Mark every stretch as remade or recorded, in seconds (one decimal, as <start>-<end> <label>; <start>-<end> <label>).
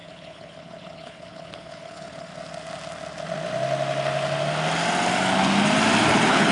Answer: 0.0-2.3 remade; 2.3-6.1 recorded; 6.1-6.5 remade